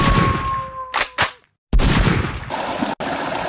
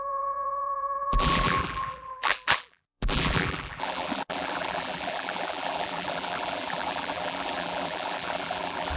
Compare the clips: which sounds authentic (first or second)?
first